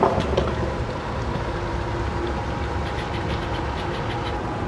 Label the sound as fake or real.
real